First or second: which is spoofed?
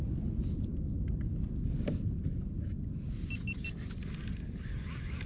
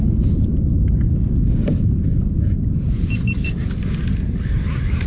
second